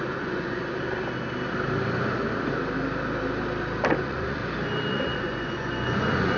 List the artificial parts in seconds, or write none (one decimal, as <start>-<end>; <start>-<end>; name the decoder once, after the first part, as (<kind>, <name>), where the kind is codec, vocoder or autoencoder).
0.0-0.6 (vocoder, Vocos); 4.0-4.4; 4.9-6.4